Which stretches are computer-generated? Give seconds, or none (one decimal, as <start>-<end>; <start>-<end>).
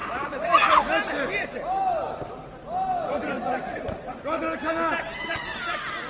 0.0-0.6; 3.0-4.2